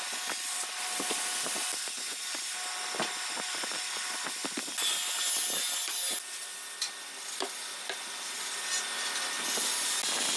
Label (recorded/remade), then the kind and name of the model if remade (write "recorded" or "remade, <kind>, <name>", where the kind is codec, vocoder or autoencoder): recorded